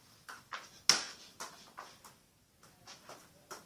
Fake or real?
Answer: real